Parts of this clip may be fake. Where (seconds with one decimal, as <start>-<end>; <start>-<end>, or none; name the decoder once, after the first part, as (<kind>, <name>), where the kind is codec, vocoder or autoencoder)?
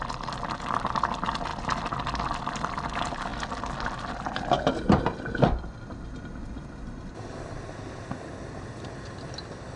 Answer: none